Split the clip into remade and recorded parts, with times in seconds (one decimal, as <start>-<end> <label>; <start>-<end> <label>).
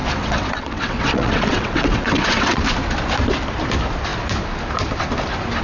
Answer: 0.0-2.6 remade; 2.6-5.6 recorded